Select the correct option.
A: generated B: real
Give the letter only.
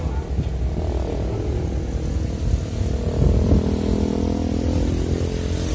B